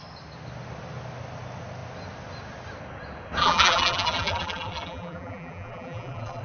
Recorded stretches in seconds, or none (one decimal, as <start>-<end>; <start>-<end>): 0.0-3.4